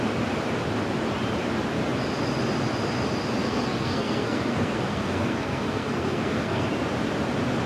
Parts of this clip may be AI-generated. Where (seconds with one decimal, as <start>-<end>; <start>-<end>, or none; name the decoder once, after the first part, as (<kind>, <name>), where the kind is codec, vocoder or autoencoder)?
3.4-6.7 (codec, SNAC)

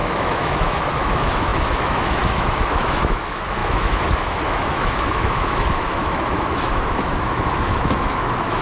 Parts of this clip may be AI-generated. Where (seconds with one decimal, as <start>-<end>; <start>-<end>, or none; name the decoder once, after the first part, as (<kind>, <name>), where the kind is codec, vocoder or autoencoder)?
0.0-8.6 (autoencoder, DAC-VAE)